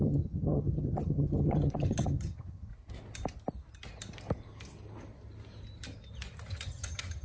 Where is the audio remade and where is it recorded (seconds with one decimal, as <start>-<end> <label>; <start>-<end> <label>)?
0.0-2.7 remade; 2.7-6.5 recorded; 6.5-7.2 remade